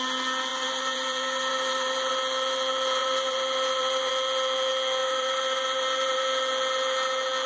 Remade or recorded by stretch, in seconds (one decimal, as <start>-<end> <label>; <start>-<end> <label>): 0.0-0.5 recorded; 0.5-2.1 remade; 2.1-3.0 recorded; 3.0-4.1 remade; 4.1-5.0 recorded; 5.0-6.2 remade; 6.2-7.5 recorded